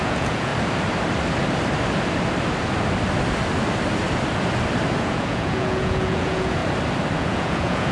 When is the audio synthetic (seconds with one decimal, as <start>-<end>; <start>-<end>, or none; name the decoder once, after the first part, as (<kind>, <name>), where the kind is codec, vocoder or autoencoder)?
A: 0.0-0.5 (vocoder, Vocos); 5.0-6.6; 7.2-7.9